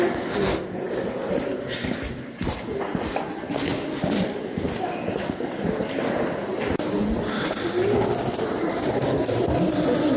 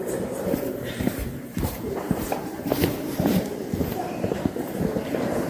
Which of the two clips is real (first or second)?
first